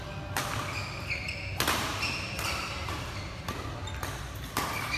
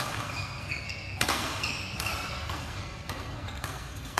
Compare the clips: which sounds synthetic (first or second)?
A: second